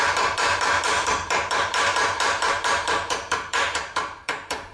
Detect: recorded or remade remade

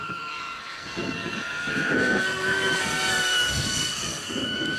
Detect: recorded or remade remade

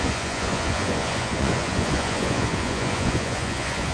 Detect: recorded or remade remade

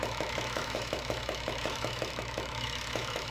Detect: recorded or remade remade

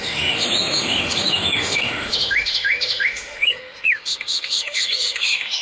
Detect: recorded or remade remade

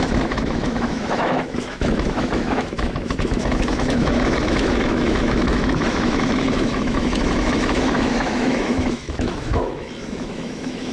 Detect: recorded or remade remade